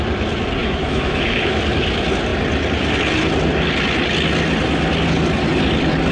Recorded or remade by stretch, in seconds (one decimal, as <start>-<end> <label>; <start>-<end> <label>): 0.0-0.6 recorded; 0.6-1.6 remade; 1.6-6.1 recorded